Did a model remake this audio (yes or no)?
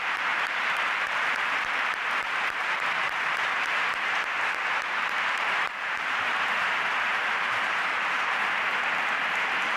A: yes